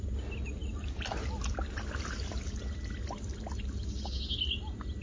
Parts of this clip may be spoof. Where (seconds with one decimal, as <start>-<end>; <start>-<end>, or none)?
none